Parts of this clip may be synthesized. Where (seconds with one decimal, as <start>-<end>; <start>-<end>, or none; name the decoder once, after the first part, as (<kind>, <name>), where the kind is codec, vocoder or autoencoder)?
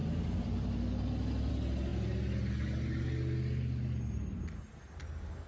0.0-1.5 (vocoder, BigVGAN v2)